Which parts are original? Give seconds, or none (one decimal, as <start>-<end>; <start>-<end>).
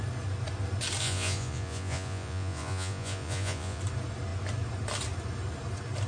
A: 0.0-1.0; 3.8-6.1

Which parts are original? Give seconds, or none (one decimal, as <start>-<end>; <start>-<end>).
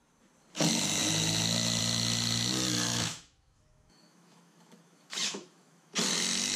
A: 0.0-2.9; 5.9-6.6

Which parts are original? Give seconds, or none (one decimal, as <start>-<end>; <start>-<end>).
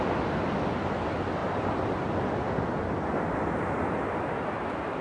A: 0.0-5.0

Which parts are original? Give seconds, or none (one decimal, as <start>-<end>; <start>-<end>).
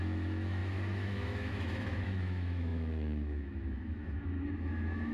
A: none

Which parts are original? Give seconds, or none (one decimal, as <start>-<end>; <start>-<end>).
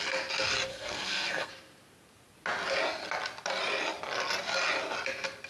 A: 0.0-0.7; 1.5-5.5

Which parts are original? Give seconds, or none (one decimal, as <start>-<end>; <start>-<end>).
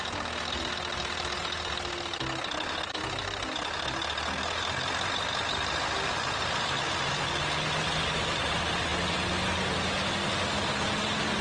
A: 0.0-11.4